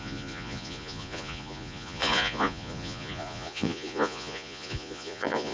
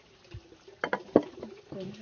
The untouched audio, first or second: second